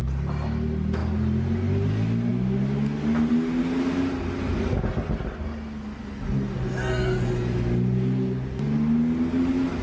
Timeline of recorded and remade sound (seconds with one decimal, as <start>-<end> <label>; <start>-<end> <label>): 0.0-9.8 recorded